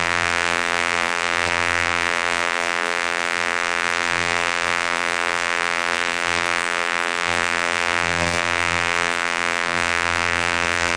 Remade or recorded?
remade